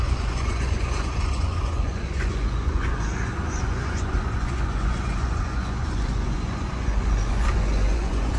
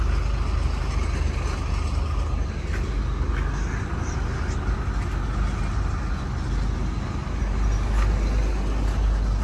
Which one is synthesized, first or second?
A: first